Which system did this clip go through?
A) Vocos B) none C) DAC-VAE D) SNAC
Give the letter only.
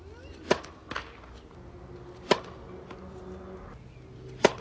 B